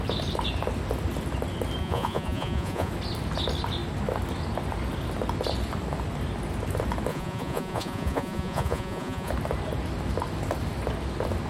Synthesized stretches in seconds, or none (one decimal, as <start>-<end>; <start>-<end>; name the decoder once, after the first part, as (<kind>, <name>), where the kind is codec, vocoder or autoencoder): 1.8-2.9 (vocoder, Vocos); 7.1-9.3